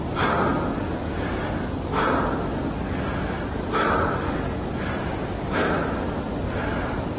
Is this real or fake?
real